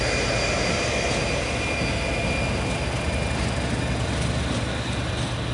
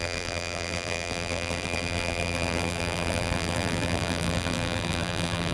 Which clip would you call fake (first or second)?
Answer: second